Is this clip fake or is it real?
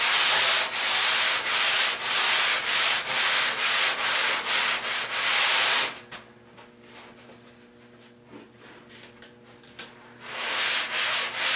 real